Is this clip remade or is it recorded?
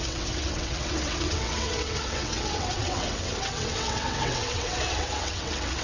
remade